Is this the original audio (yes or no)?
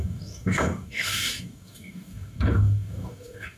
no